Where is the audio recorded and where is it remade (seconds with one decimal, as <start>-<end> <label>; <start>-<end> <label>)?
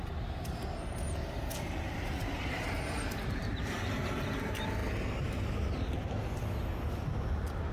0.0-7.7 recorded